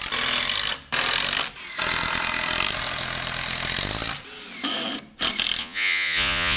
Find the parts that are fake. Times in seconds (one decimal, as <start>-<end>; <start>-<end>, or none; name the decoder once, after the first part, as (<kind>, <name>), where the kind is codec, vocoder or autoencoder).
5.6-6.6 (vocoder, Vocos)